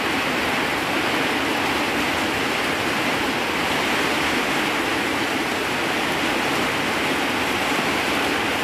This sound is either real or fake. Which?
real